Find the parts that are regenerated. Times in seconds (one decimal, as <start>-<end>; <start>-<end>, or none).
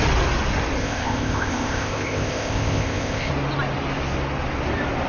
0.8-3.3